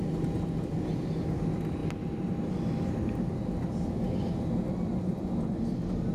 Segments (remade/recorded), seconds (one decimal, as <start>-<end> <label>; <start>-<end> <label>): 0.0-6.1 recorded